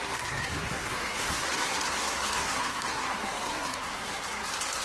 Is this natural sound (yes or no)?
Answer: no